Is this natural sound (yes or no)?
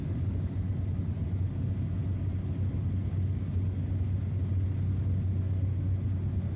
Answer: yes